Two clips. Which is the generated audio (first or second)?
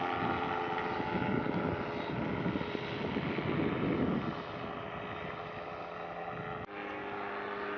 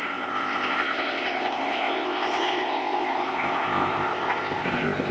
second